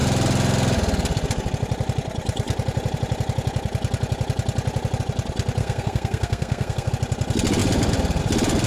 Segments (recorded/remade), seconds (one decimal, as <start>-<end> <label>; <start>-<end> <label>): 0.0-5.6 recorded; 5.6-6.9 remade; 6.9-8.7 recorded